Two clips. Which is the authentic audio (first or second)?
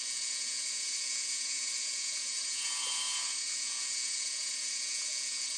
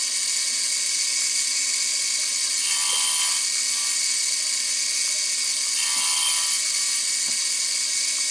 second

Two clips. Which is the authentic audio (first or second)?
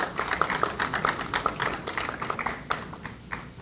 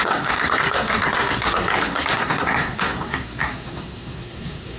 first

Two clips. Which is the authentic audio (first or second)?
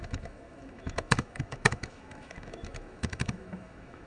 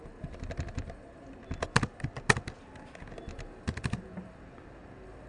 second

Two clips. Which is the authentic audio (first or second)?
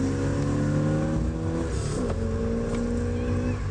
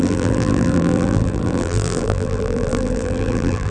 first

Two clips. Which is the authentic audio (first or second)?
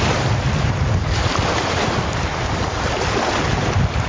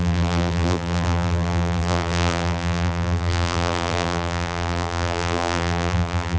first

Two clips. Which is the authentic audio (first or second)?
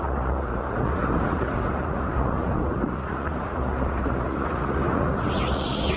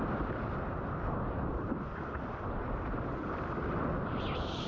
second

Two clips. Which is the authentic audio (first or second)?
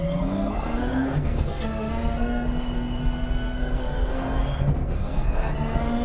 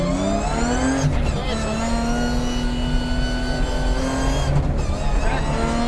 second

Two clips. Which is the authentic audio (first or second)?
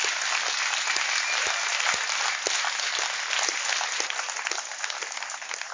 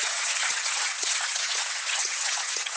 first